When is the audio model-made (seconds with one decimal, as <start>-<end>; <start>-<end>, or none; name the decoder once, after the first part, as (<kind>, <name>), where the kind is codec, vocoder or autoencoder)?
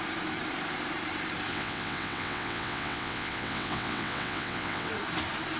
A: 1.5-4.9 (vocoder, WaveNeXt)